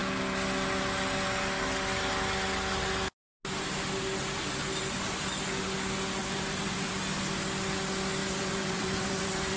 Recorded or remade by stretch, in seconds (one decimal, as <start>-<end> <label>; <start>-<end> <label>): 0.0-6.2 recorded; 6.2-6.9 remade; 6.9-8.2 recorded; 8.2-9.6 remade